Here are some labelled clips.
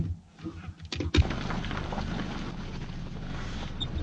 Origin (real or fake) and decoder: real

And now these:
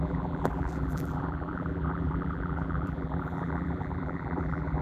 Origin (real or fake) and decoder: fake, vocoder, BigVGAN v2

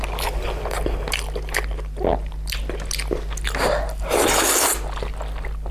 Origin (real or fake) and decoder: real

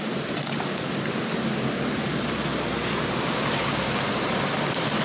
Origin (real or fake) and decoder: real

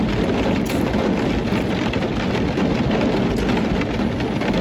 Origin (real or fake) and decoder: real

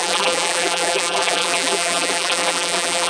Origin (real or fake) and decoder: fake, vocoder, BigVGAN v2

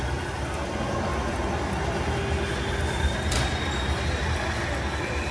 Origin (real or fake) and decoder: real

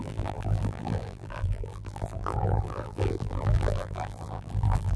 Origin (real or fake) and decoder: fake, vocoder, BigVGAN v2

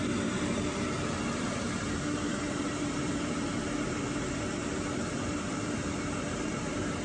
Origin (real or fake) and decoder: fake, vocoder, BigVGAN v2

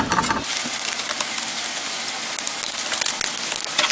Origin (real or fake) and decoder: real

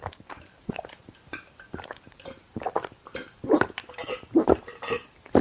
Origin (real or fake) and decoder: fake, vocoder, BigVGAN v2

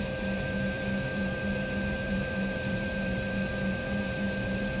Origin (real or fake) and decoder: fake, vocoder, BigVGAN v2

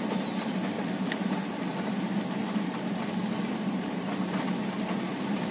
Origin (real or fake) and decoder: real